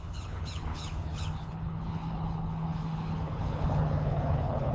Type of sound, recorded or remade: remade